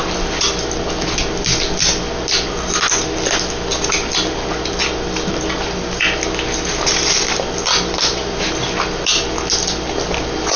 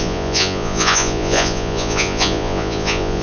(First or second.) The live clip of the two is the first